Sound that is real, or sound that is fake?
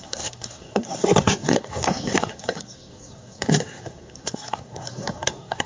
fake